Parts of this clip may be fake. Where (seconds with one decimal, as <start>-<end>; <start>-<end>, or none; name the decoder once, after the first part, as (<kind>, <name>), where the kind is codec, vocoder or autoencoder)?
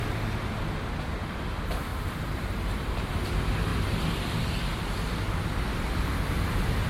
1.9-3.1 (vocoder, BigVGAN v2); 3.7-4.8